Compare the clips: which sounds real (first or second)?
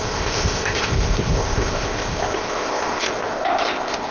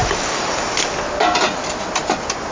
second